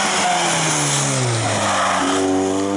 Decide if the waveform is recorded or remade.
recorded